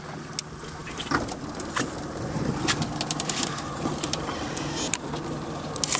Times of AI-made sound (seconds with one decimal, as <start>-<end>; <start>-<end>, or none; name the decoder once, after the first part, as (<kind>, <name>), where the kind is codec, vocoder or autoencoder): 0.8-4.4 (vocoder, BigVGAN v2)